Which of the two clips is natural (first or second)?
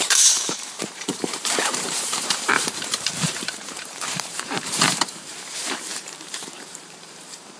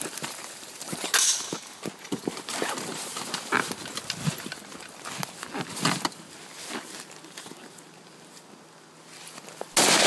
second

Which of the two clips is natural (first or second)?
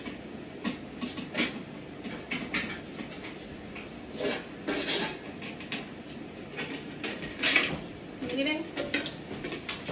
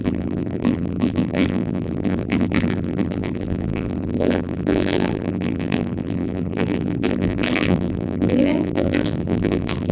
first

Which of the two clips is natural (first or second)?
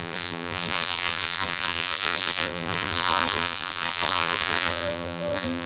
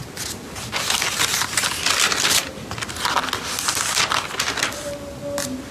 second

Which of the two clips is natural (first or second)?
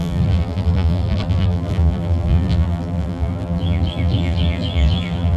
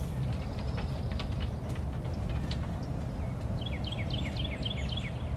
second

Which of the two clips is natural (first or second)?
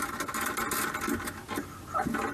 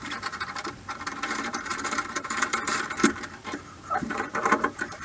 first